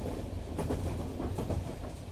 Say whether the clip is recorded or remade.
remade